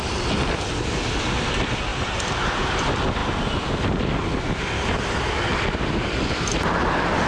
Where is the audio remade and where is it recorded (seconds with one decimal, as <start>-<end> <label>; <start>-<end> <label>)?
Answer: 0.0-7.3 recorded